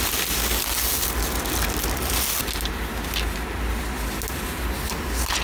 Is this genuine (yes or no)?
yes